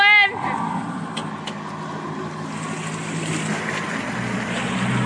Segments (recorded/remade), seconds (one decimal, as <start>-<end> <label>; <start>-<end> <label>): 0.0-5.1 recorded